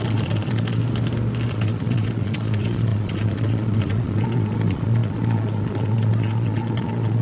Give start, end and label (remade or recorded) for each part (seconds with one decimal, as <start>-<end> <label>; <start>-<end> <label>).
0.0-0.8 remade; 0.8-1.5 recorded; 1.5-7.2 remade